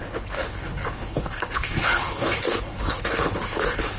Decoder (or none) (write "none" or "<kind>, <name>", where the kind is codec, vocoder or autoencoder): codec, HILCodec